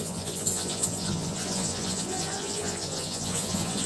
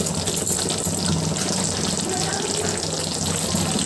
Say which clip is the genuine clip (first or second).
second